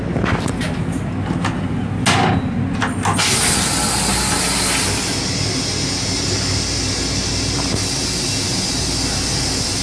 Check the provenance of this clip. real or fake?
real